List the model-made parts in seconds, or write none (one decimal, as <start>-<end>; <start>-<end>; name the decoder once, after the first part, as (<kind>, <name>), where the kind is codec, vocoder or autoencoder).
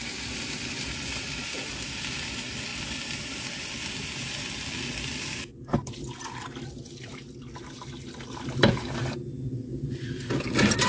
none